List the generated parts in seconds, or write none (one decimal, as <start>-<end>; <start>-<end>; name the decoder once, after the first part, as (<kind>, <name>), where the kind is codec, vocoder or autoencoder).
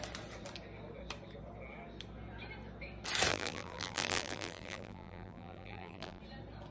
3.3-6.2 (vocoder, BigVGAN v2)